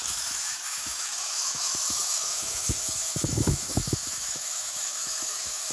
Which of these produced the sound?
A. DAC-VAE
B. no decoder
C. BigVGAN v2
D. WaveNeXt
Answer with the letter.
A